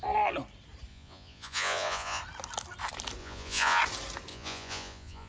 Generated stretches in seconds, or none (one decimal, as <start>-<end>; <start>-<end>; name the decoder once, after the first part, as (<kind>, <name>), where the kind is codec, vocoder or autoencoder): 0.9-2.2 (vocoder, Vocos); 3.2-3.8; 4.3-5.3